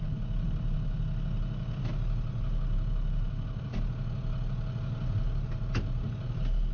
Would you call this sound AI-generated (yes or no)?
no